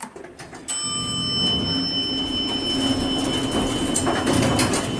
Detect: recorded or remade recorded